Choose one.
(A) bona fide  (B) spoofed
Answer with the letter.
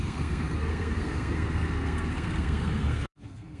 B